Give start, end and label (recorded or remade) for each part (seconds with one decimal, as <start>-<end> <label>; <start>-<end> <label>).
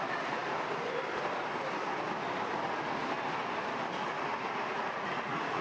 0.0-4.7 recorded; 4.7-5.6 remade